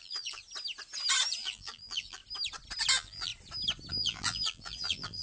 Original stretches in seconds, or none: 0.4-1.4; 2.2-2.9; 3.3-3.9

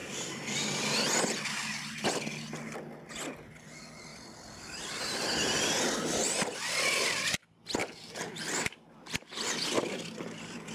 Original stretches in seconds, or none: 0.0-7.8; 9.8-10.7

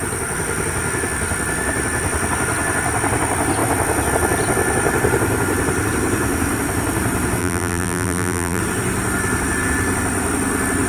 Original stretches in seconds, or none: 0.0-7.4; 8.6-10.9

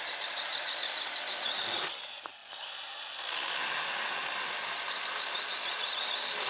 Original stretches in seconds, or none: 0.0-6.5

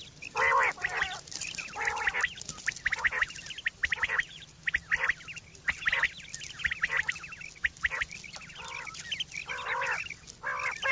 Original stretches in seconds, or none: 0.0-3.8; 4.6-10.9

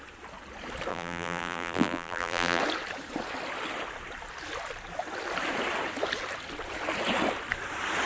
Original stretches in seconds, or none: 0.0-0.9; 2.6-8.1